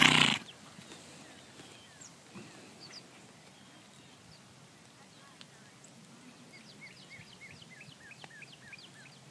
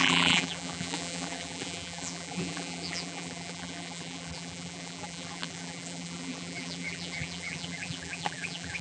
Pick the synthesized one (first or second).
second